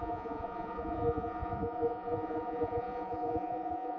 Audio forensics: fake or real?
fake